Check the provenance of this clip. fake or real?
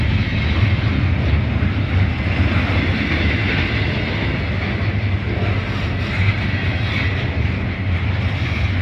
real